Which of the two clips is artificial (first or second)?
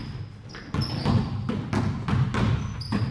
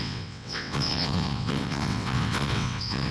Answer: second